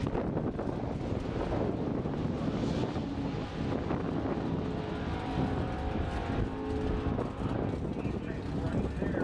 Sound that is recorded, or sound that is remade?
recorded